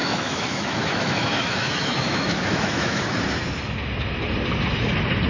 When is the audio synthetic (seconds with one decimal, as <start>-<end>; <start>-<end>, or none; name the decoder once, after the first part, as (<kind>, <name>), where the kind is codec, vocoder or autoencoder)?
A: 0.0-3.2 (autoencoder, DAC-VAE)